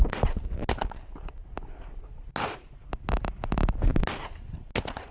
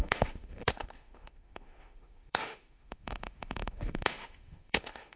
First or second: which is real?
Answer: first